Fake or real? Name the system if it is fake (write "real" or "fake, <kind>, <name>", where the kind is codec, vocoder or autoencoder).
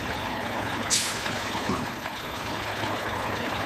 fake, codec, HILCodec